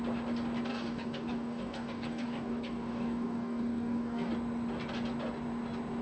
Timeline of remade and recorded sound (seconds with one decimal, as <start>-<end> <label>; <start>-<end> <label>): 0.0-0.7 recorded; 0.7-4.3 remade; 4.3-6.0 recorded